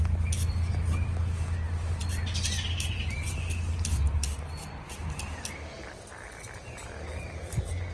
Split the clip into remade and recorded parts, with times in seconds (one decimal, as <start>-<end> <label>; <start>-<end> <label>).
0.0-7.9 recorded